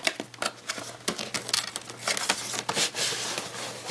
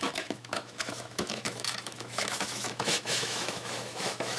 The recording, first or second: first